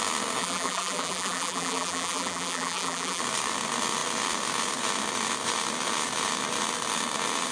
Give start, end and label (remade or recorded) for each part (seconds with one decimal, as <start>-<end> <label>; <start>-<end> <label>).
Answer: 0.0-0.4 recorded; 0.4-3.2 remade; 3.2-7.5 recorded